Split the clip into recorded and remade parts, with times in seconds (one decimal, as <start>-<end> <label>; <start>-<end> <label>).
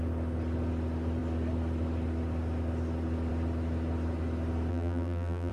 0.0-4.7 recorded; 4.7-5.5 remade